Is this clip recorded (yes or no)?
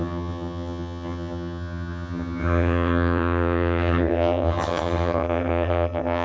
no